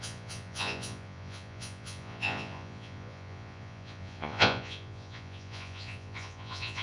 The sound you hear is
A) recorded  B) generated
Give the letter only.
B